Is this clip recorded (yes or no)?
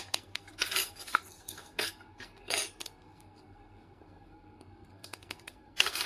no